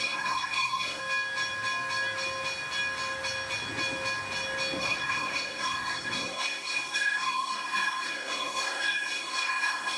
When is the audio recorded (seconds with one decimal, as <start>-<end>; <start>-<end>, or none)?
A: 1.0-4.8